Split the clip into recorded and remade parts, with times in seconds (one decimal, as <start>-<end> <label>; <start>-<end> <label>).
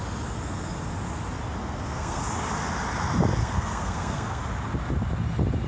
0.0-1.6 recorded; 1.6-2.2 remade; 2.2-3.4 recorded; 3.4-4.4 remade; 4.4-5.7 recorded